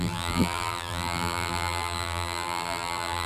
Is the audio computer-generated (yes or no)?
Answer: yes